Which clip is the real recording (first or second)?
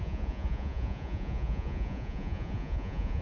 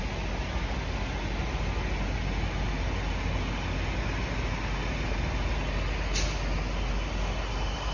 second